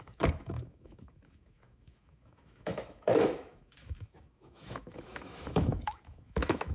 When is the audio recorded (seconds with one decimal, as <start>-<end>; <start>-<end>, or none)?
none